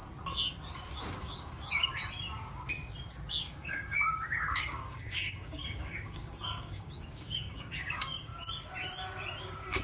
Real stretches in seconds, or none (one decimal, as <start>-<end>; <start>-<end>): 0.0-1.2; 1.9-3.4; 8.3-9.4